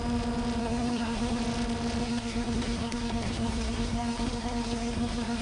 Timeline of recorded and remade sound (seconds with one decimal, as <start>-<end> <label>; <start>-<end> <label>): 0.0-0.6 recorded; 0.6-1.4 remade; 1.4-2.0 recorded; 2.0-5.4 remade